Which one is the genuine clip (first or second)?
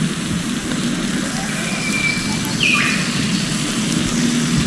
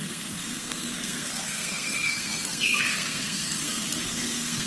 first